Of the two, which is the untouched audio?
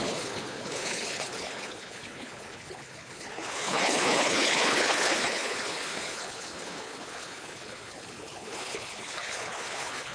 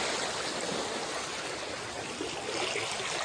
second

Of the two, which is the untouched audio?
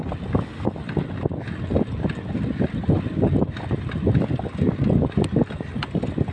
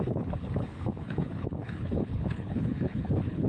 first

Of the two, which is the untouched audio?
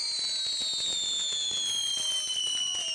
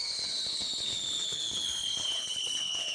first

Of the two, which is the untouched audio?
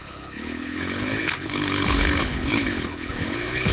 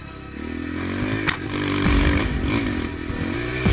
second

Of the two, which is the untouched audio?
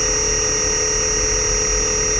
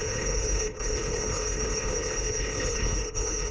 first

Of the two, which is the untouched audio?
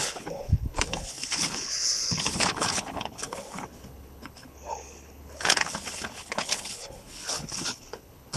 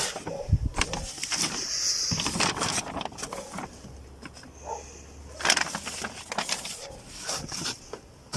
second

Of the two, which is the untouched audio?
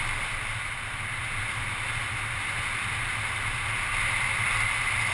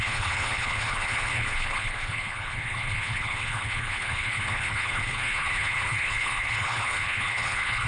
first